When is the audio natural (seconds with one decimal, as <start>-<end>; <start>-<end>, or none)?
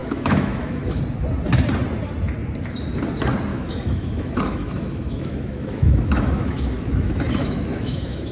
1.0-3.5